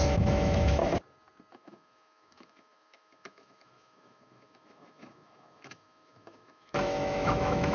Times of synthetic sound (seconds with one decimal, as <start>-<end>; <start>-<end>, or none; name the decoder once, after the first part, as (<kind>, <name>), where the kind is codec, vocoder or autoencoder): 0.0-0.8 (autoencoder, DAC-VAE); 1.5-7.7